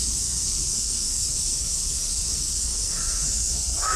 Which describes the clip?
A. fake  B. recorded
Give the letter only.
A